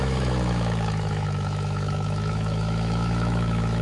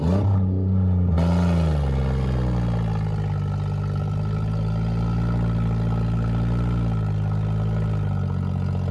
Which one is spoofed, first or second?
first